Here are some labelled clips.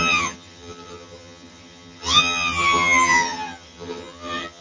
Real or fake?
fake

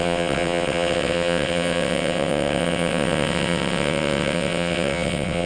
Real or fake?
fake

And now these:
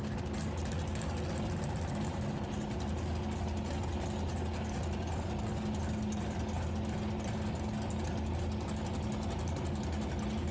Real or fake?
real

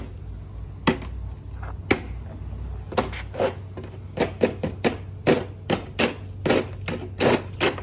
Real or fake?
real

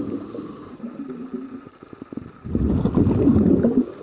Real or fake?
real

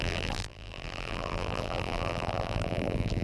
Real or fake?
fake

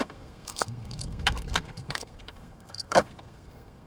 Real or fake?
fake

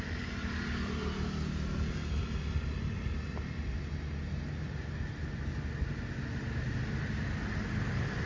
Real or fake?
real